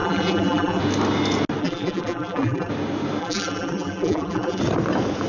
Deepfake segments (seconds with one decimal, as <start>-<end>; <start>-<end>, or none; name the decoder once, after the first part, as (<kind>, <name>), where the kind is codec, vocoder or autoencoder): 0.0-0.8 (vocoder, BigVGAN v2); 1.6-2.7; 3.2-4.6